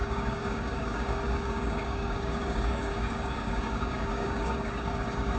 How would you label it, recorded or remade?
remade